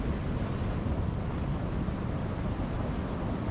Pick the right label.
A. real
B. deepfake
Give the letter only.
A